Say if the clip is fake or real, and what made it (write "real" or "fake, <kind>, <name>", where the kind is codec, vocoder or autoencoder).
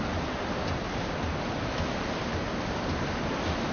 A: real